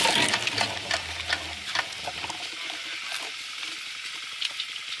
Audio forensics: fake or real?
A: real